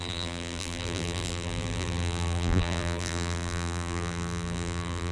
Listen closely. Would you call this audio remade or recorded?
remade